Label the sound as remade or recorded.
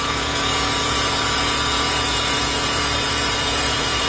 remade